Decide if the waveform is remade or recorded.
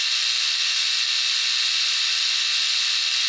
recorded